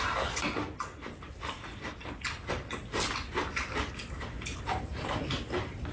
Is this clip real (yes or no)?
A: yes